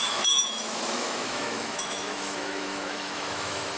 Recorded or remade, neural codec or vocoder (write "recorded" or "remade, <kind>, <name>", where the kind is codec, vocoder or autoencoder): remade, autoencoder, DAC-VAE